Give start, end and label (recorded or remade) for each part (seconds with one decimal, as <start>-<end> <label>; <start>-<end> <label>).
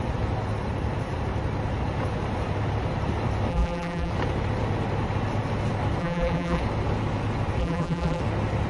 0.0-3.5 recorded; 3.5-4.1 remade; 4.1-6.0 recorded; 6.0-6.6 remade; 6.6-7.6 recorded; 7.6-8.2 remade; 8.2-8.7 recorded